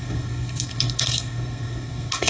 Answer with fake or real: fake